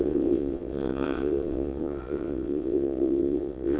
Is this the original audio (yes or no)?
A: no